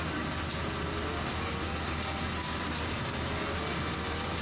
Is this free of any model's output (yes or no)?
yes